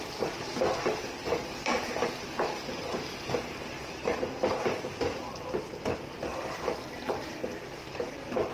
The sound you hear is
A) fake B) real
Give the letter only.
A